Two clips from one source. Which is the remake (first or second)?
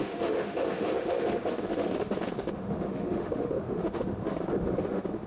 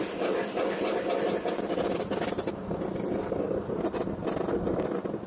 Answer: first